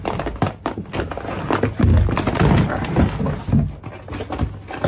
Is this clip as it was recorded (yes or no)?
yes